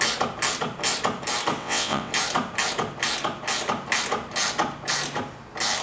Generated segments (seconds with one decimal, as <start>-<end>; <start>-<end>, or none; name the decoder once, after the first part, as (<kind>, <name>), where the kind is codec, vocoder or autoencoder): 1.6-2.1 (vocoder, WaveNeXt)